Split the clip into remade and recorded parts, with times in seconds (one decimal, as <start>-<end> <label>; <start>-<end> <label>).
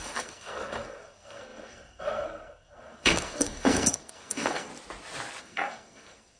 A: 0.0-4.7 remade; 4.7-5.4 recorded; 5.4-6.4 remade